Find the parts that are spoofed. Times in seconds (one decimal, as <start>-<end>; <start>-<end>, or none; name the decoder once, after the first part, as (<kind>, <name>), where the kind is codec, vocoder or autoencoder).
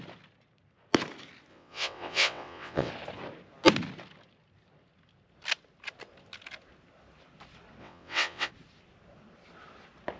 1.5-2.9 (vocoder, WaveNeXt); 7.8-8.5